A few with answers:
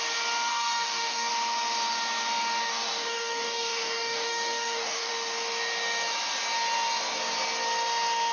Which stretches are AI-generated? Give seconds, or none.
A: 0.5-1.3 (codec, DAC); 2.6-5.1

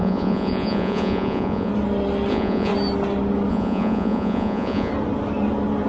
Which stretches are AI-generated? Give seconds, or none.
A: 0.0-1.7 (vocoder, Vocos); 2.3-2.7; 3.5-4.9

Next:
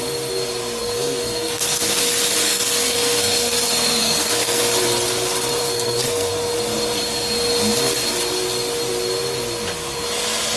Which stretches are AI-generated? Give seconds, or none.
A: 0.8-2.0 (codec, SNAC); 2.4-4.6; 5.6-6.3

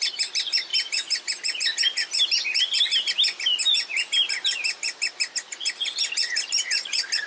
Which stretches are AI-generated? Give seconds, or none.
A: none

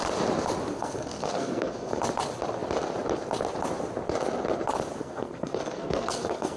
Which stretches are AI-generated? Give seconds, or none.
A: 0.7-2.0 (codec, SNAC); 5.0-6.6

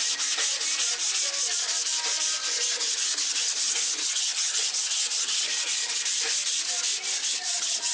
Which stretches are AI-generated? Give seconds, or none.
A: 2.4-6.0 (vocoder, HiFi-GAN); 7.2-7.9